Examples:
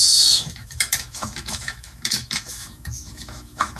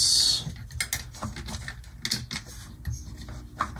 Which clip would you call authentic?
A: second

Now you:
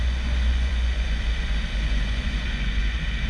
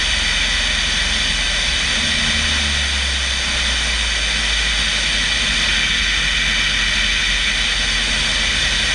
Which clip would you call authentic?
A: second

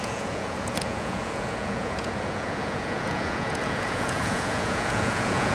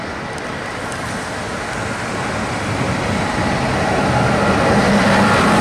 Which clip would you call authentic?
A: second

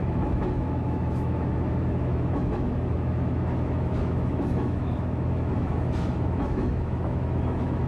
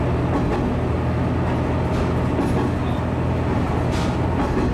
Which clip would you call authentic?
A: second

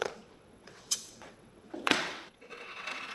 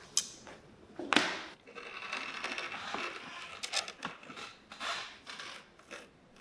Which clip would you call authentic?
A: second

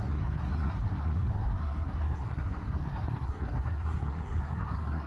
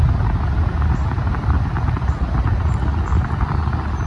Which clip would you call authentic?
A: second